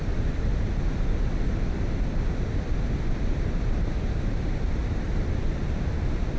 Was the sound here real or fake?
real